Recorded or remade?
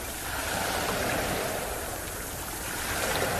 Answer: recorded